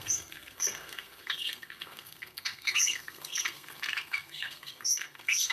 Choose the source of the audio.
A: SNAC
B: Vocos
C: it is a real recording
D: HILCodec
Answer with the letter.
A